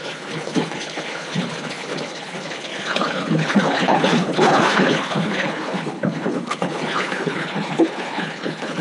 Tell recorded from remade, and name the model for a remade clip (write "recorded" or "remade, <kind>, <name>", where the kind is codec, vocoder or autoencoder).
remade, codec, HILCodec